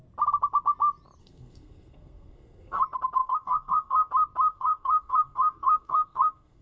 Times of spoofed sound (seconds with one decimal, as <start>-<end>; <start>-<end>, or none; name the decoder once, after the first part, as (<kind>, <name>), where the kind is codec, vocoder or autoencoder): 1.2-2.8 (codec, SNAC); 3.2-4.1; 4.5-6.6